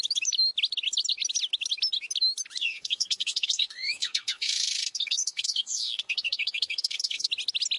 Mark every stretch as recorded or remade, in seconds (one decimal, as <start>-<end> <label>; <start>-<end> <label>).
0.0-2.6 recorded; 2.6-7.3 remade; 7.3-7.8 recorded

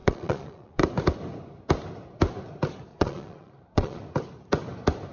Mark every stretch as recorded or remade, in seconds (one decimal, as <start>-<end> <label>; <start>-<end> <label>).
0.0-0.8 remade; 0.8-2.9 recorded; 2.9-4.0 remade; 4.0-5.1 recorded